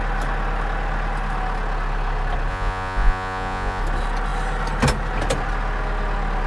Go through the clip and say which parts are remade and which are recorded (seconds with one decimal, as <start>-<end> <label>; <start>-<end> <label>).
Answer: 0.0-2.5 recorded; 2.5-3.8 remade; 3.8-6.5 recorded